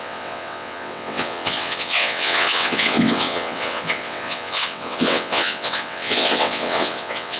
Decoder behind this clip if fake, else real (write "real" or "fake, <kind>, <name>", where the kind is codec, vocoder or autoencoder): fake, vocoder, WaveNeXt